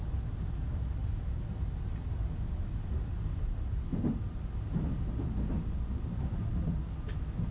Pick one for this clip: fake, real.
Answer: real